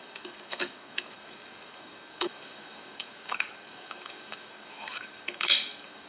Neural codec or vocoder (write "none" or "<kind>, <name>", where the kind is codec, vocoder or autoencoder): codec, DAC